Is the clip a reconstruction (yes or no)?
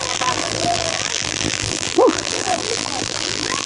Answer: yes